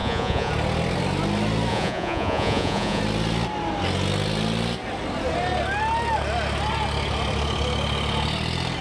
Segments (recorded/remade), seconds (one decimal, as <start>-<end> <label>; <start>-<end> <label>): 0.0-0.5 remade; 0.5-1.7 recorded; 1.7-3.0 remade; 3.0-8.8 recorded